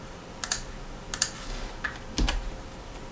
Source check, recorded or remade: recorded